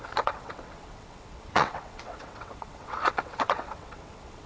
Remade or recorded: remade